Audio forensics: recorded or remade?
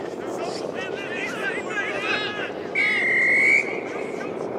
recorded